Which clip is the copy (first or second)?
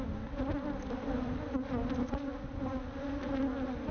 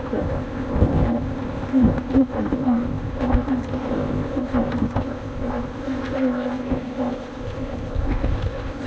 second